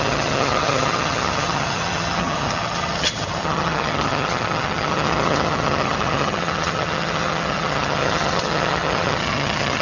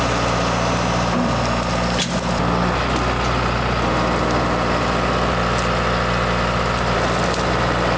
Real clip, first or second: second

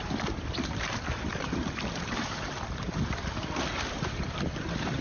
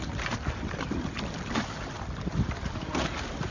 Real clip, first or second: second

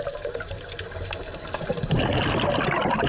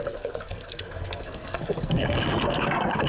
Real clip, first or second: first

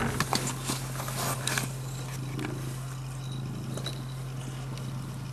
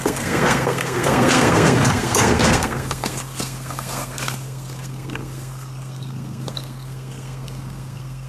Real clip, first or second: first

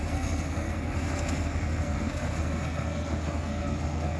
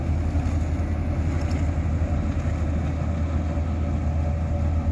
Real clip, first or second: second